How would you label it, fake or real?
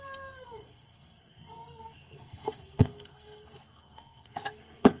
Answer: fake